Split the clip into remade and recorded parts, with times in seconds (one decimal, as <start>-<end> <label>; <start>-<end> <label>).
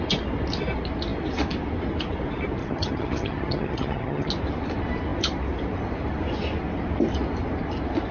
0.0-2.6 recorded; 2.6-4.3 remade; 4.3-8.1 recorded